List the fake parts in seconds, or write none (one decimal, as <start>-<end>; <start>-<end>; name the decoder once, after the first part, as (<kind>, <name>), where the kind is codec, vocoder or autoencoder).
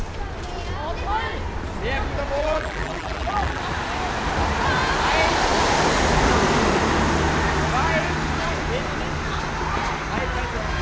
2.4-3.6 (vocoder, BigVGAN v2)